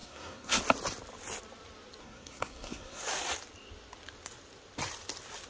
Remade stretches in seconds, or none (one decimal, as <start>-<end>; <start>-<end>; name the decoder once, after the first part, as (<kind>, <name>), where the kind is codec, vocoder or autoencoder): 0.0-0.6 (codec, SNAC); 2.0-3.0